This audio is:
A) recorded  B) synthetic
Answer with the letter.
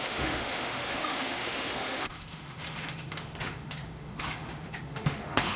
B